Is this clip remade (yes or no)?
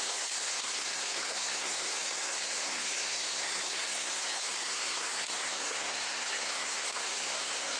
yes